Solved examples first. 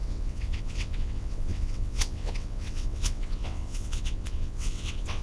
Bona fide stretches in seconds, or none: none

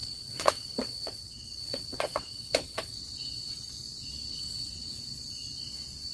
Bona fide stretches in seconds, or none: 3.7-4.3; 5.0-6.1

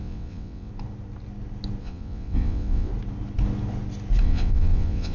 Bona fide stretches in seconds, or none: 0.7-1.8; 2.9-4.2

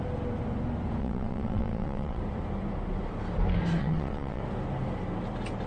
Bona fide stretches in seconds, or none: 0.0-1.0; 2.2-3.8; 4.4-5.7